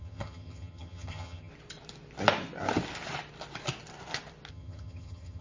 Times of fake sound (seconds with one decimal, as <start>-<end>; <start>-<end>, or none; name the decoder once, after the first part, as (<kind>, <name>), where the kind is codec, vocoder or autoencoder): 0.0-1.5 (vocoder, HiFi-GAN); 4.5-5.4